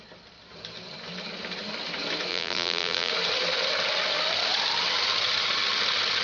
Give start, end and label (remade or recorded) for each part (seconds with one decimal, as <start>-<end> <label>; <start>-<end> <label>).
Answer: 0.0-2.3 recorded; 2.3-3.1 remade; 3.1-6.2 recorded